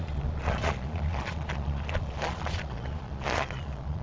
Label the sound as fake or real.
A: fake